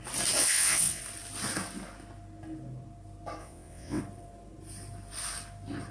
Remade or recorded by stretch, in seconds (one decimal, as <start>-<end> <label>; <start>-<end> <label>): 0.0-0.4 recorded; 0.4-1.0 remade; 1.0-3.4 recorded; 3.4-4.0 remade; 4.0-5.9 recorded